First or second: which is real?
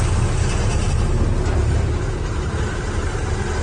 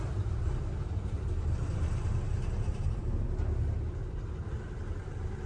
first